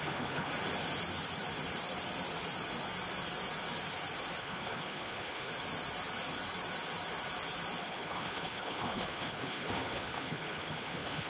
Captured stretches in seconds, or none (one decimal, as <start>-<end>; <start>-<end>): 0.5-4.4; 5.5-7.8